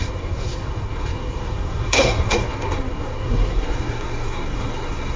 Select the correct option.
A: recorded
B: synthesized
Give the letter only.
B